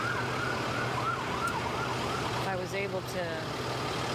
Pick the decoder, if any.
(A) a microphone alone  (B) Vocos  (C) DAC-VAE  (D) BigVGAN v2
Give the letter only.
A